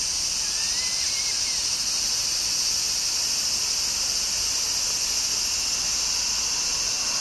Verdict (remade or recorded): recorded